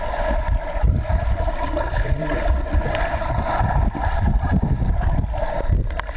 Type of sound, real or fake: real